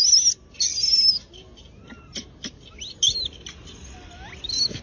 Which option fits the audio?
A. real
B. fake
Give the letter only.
A